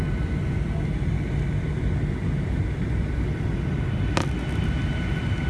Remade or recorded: recorded